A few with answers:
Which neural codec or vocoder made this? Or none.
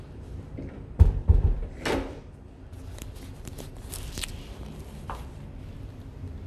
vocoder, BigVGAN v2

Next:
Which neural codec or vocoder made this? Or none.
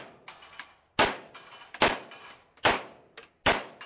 none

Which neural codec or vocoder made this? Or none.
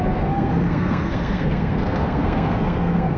codec, SNAC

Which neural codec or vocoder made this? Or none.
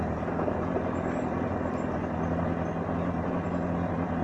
none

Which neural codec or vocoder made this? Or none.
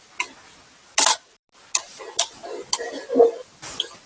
none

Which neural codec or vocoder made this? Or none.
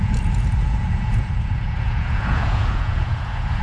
vocoder, Vocos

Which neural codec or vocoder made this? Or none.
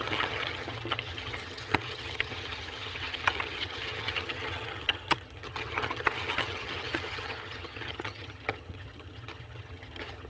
vocoder, HiFi-GAN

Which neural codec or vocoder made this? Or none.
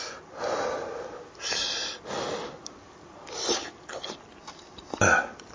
none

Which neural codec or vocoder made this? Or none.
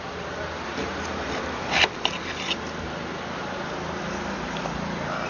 none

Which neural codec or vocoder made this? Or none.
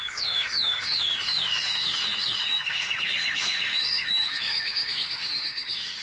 autoencoder, DAC-VAE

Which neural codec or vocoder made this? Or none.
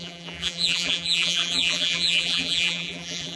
vocoder, BigVGAN v2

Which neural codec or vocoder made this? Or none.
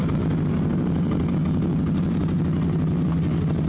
none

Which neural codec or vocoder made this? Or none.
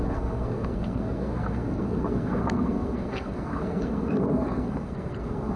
codec, SNAC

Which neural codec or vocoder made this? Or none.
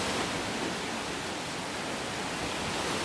none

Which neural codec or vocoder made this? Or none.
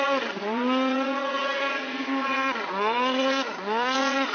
vocoder, Vocos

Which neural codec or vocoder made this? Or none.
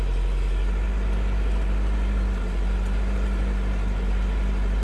none